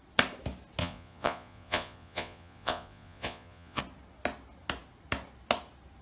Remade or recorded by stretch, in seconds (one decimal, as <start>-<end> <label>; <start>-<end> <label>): 0.0-0.8 recorded; 0.8-3.8 remade; 3.8-6.0 recorded

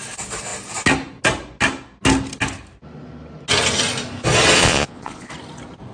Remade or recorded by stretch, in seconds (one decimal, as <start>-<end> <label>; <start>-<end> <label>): 0.0-4.6 recorded; 4.6-5.3 remade; 5.3-5.9 recorded

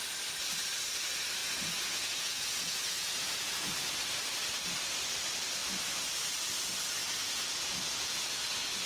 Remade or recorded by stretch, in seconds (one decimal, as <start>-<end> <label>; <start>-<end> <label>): 0.0-1.4 recorded; 1.4-3.7 remade; 3.7-7.0 recorded; 7.0-8.4 remade; 8.4-8.9 recorded

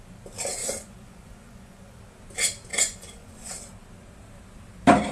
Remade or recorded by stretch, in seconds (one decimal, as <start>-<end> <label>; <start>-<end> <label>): 0.0-0.6 recorded; 0.6-2.0 remade; 2.0-2.7 recorded; 2.7-3.5 remade; 3.5-5.1 recorded

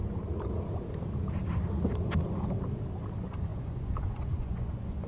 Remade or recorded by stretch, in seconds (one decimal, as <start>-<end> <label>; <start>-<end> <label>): 0.0-3.1 recorded; 3.1-5.1 remade

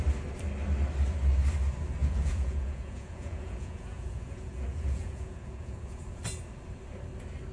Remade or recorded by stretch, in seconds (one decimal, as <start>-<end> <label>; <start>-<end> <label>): 0.0-2.0 recorded; 2.0-6.2 remade; 6.2-7.5 recorded

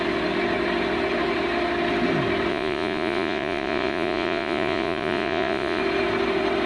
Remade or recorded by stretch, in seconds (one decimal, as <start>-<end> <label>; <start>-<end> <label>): 0.0-2.5 recorded; 2.5-5.8 remade; 5.8-6.7 recorded

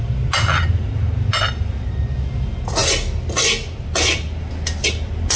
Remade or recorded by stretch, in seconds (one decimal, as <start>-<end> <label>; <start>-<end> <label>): 0.0-5.4 recorded